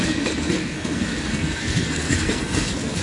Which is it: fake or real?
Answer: fake